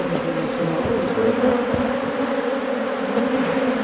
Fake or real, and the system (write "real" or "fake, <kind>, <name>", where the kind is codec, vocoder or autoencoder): real